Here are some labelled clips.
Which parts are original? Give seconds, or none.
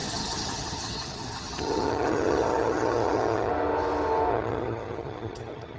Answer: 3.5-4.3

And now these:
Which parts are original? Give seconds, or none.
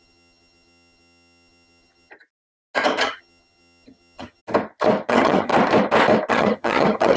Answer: 2.1-3.0; 4.4-5.1; 5.5-6.3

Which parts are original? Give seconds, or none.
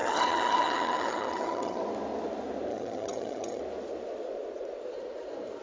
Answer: 1.8-2.7; 3.6-5.6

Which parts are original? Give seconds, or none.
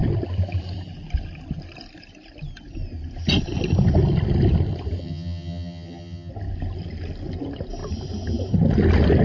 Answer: 0.0-5.0; 6.3-9.2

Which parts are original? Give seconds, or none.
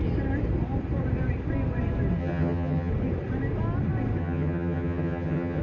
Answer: 0.0-2.2; 2.9-4.2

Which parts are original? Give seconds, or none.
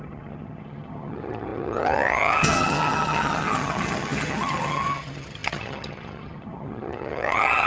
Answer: none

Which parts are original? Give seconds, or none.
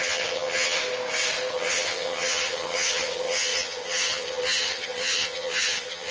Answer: 0.8-1.5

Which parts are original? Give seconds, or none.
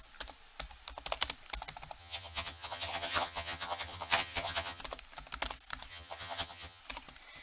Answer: 0.0-2.0; 4.8-5.9; 6.8-7.4